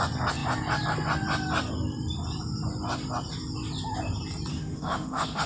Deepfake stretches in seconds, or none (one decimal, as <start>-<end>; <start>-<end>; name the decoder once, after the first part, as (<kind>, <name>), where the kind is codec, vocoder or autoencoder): 4.5-5.5 (autoencoder, DAC-VAE)